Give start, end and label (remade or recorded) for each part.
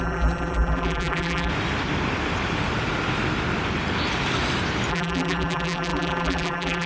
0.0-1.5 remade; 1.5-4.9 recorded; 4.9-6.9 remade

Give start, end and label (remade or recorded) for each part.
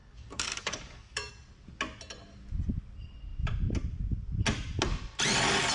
0.0-1.3 remade; 1.3-5.7 recorded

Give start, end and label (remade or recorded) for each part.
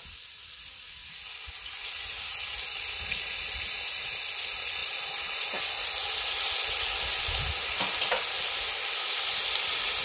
0.0-10.0 recorded